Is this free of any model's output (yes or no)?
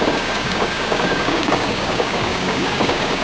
no